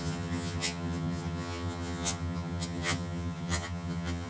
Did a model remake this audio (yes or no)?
yes